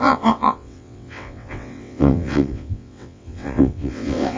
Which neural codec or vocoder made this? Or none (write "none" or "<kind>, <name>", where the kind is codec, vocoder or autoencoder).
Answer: vocoder, WaveNeXt